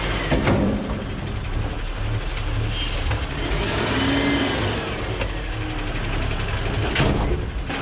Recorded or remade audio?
recorded